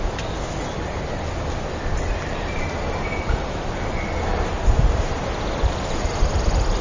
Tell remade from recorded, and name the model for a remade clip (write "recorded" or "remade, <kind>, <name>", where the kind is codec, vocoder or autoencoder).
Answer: recorded